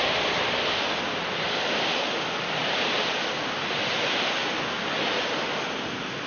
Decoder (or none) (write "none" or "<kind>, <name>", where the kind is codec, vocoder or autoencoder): none